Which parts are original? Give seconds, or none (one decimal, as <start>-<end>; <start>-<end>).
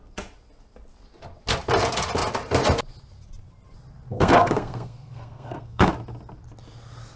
0.0-4.1; 5.9-7.2